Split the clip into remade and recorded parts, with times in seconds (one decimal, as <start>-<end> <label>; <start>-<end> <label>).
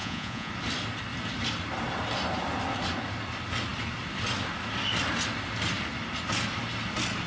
0.0-0.5 remade; 0.5-7.3 recorded